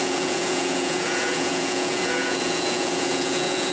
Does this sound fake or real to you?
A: fake